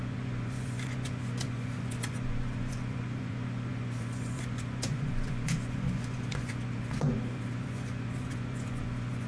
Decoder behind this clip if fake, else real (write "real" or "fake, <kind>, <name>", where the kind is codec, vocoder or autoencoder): fake, vocoder, Vocos